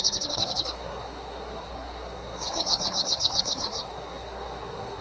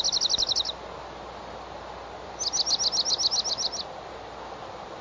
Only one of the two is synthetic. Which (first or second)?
first